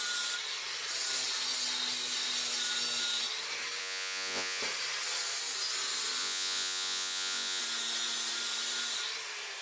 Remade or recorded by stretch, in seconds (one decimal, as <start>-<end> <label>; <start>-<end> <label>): 0.0-3.8 recorded; 3.8-4.6 remade; 4.6-6.2 recorded; 6.2-7.6 remade; 7.6-9.6 recorded

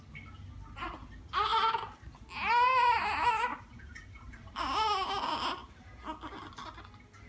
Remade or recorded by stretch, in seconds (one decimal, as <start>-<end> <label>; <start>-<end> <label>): 0.0-3.5 recorded; 3.5-4.6 remade; 4.6-7.3 recorded

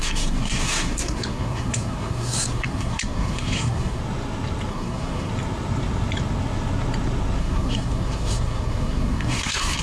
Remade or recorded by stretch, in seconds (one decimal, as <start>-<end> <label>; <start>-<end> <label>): 0.0-4.0 remade; 4.0-4.7 recorded; 4.7-5.3 remade; 5.3-7.4 recorded; 7.4-9.8 remade

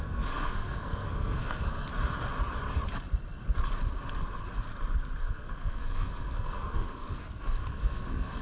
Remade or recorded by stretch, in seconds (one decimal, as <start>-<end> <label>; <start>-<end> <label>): 0.0-1.9 remade; 1.9-5.2 recorded; 5.2-8.4 remade

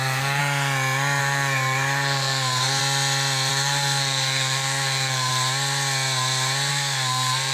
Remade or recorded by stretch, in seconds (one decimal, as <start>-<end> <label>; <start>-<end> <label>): 0.0-0.4 remade; 0.4-1.2 recorded; 1.2-2.8 remade; 2.8-3.5 recorded; 3.5-5.3 remade; 5.3-6.7 recorded; 6.7-7.5 remade

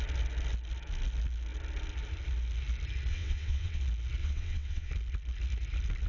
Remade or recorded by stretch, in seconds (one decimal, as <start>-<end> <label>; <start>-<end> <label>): 0.0-3.1 recorded; 3.1-3.8 remade; 3.8-4.2 recorded; 4.2-4.9 remade; 4.9-6.1 recorded

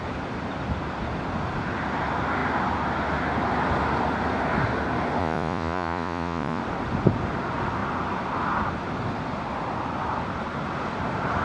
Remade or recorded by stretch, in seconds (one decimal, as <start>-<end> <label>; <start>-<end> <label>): 0.0-5.2 recorded; 5.2-6.6 remade; 6.6-11.4 recorded